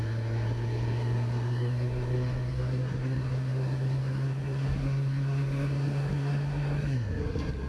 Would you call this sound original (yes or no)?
no